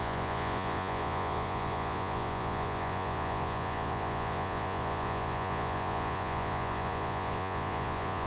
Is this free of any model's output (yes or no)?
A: no